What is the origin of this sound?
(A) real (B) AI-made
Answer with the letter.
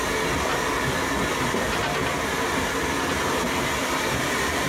A